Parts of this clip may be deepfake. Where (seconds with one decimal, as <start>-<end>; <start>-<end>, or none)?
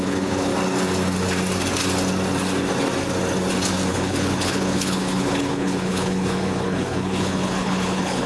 0.0-0.5; 3.9-8.3